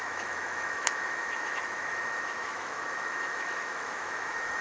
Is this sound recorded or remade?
remade